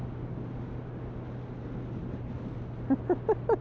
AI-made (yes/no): no